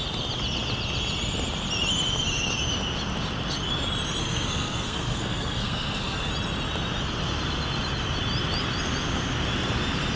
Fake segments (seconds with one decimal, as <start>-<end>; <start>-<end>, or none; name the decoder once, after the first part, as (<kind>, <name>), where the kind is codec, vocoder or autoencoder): 4.2-6.3 (codec, SNAC)